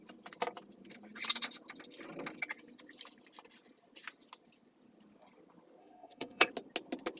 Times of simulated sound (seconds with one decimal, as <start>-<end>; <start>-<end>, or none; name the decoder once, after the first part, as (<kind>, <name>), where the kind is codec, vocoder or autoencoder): 5.8-6.5 (codec, SNAC)